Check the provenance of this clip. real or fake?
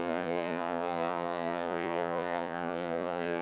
fake